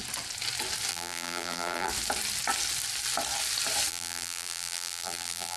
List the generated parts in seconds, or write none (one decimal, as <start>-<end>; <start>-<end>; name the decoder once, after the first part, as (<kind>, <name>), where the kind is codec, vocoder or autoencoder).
0.9-1.9 (vocoder, BigVGAN v2); 3.9-5.6